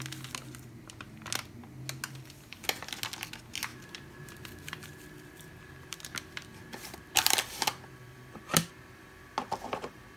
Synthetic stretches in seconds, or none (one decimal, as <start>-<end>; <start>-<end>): 3.7-8.7